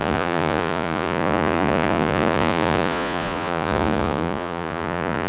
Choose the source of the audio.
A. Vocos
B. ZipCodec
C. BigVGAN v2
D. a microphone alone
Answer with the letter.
A